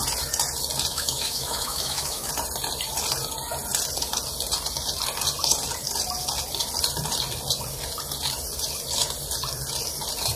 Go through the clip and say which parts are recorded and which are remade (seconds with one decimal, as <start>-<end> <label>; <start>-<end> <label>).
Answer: 0.0-0.9 recorded; 0.9-2.3 remade; 2.3-10.4 recorded